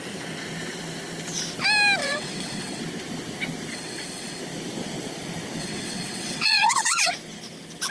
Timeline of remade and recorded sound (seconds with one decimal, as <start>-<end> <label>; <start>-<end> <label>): 0.0-2.0 recorded; 2.0-2.8 remade; 2.8-3.7 recorded; 3.7-4.4 remade; 4.4-5.6 recorded; 5.6-7.1 remade; 7.1-7.9 recorded